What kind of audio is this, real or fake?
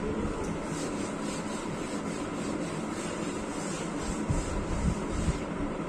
fake